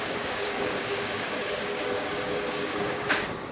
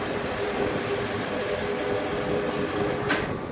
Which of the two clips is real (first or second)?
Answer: second